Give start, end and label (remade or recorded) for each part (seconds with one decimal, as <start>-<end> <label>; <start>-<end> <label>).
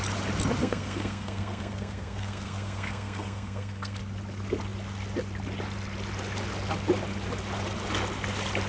0.0-0.6 recorded; 0.6-4.0 remade; 4.0-8.7 recorded